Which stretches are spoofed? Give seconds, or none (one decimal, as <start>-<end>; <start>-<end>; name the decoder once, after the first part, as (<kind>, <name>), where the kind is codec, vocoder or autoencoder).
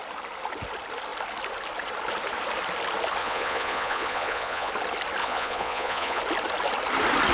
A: 3.2-4.7 (vocoder, Vocos); 5.2-6.2